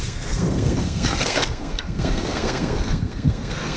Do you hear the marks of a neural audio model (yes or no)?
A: yes